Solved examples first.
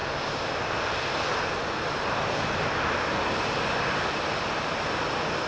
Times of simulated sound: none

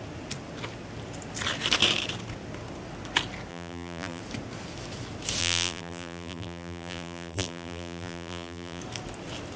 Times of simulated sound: 3.5-4.2 (vocoder, BigVGAN v2); 5.4-8.8

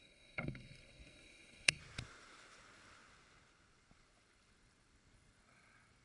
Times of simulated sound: 0.0-1.8 (codec, SNAC)